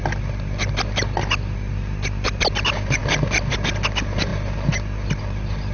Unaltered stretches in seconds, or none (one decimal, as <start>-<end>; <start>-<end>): 0.0-5.7